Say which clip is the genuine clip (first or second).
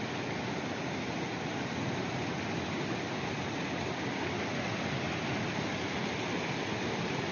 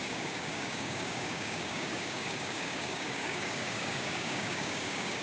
first